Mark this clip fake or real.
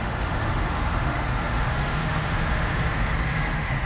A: fake